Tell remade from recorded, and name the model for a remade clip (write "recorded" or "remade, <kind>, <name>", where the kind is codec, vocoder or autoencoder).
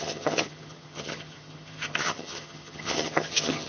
remade, vocoder, HiFi-GAN